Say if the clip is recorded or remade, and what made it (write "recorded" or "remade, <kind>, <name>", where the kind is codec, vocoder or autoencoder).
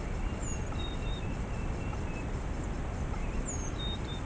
recorded